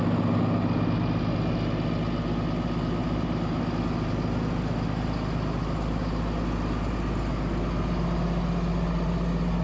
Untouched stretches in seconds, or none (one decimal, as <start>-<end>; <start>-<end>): 0.0-3.0; 3.6-9.6